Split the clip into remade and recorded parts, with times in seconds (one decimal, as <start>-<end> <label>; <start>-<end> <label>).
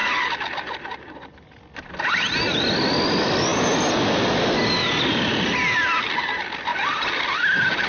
0.0-7.9 recorded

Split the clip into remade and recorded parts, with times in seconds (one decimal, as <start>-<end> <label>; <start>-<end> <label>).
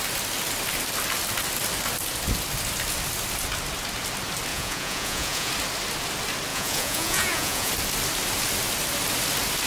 0.0-4.5 recorded; 4.5-5.5 remade; 5.5-6.5 recorded; 6.5-7.7 remade; 7.7-9.7 recorded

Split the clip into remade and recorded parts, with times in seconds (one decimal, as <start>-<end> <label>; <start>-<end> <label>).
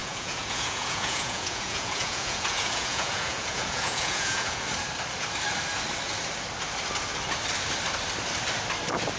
0.0-4.6 remade; 4.6-9.2 recorded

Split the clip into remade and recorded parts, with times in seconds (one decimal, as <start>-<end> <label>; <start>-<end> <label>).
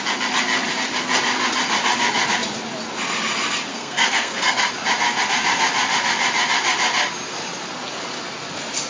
0.0-3.7 recorded; 3.7-4.7 remade; 4.7-8.9 recorded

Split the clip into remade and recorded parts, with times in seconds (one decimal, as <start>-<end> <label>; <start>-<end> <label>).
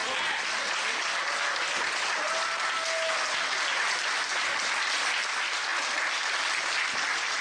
0.0-7.4 recorded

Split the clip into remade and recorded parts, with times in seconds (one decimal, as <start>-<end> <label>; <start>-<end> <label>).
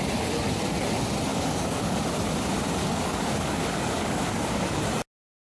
0.0-1.3 recorded; 1.3-2.0 remade; 2.0-2.8 recorded; 2.8-4.8 remade; 4.8-5.4 recorded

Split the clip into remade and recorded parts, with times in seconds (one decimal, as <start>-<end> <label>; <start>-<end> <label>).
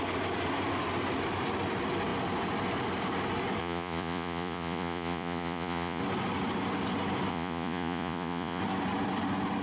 0.0-3.6 recorded; 3.6-6.0 remade; 6.0-7.3 recorded; 7.3-8.6 remade; 8.6-9.6 recorded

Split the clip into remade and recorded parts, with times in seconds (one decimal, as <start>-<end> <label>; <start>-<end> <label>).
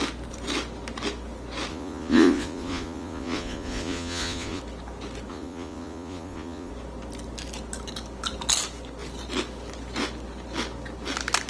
0.0-1.7 recorded; 1.7-4.6 remade; 4.6-5.3 recorded; 5.3-6.7 remade; 6.7-11.5 recorded